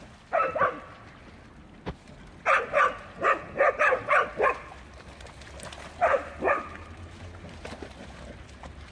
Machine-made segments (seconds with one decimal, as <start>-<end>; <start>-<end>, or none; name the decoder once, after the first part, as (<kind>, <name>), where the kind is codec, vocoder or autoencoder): none